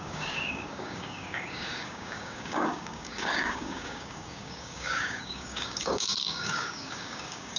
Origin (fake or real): fake